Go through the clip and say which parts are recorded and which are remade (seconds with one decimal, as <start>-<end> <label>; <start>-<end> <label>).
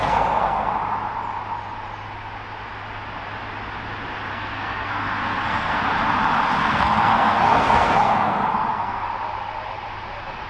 0.0-0.7 remade; 0.7-4.3 recorded; 4.3-5.8 remade; 5.8-6.6 recorded; 6.6-9.1 remade; 9.1-10.5 recorded